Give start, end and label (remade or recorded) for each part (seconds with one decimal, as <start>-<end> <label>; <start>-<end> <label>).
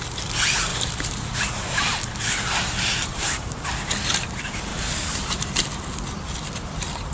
0.0-0.7 recorded; 0.7-3.7 remade; 3.7-4.7 recorded; 4.7-5.8 remade; 5.8-7.1 recorded